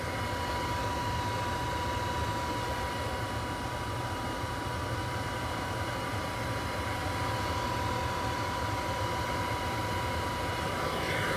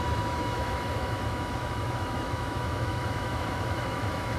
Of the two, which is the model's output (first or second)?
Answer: second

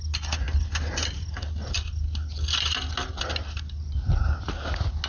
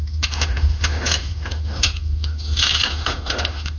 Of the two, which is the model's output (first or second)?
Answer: second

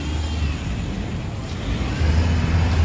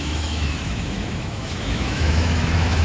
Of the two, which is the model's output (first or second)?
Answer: second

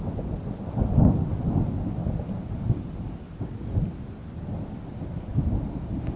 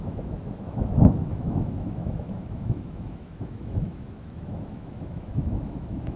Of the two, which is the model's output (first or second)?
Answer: second